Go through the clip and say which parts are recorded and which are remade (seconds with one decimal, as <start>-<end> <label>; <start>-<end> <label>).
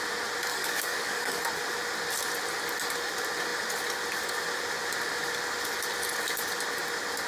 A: 0.0-0.5 recorded; 0.5-1.4 remade; 1.4-7.3 recorded